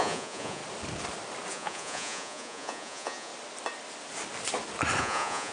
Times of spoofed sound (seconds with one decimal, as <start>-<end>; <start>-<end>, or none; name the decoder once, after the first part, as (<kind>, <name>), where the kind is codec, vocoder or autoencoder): 0.0-0.6 (vocoder, Vocos); 1.5-3.3; 5.0-5.5